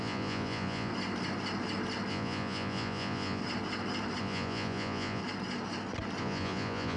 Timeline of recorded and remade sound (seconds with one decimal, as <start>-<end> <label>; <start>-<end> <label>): 0.0-0.9 remade; 0.9-2.1 recorded; 2.1-3.4 remade; 3.4-4.2 recorded; 4.2-5.2 remade; 5.2-6.2 recorded; 6.2-7.0 remade